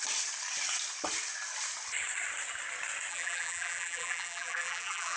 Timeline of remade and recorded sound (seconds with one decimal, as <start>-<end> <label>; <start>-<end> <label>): 0.0-3.1 recorded; 3.1-5.2 remade